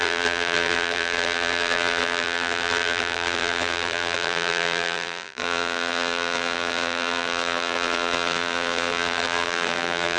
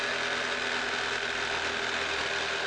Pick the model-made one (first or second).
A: first